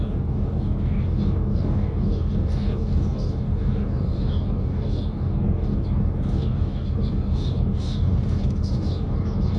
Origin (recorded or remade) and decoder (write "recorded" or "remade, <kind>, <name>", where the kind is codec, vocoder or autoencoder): remade, codec, DAC